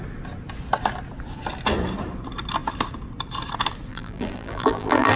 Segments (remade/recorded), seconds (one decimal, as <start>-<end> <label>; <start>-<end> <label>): 0.0-3.9 recorded; 3.9-5.2 remade